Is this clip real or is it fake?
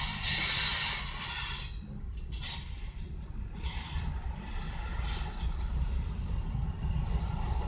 real